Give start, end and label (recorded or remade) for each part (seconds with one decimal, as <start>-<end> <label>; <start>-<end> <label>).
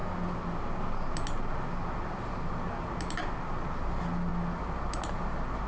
0.0-5.7 recorded